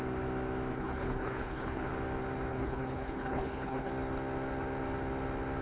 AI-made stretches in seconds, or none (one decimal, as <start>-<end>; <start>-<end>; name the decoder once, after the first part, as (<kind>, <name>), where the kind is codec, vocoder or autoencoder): 0.7-1.9 (codec, HILCodec); 2.5-3.9